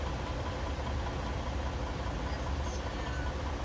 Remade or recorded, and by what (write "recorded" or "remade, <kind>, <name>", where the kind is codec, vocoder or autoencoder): recorded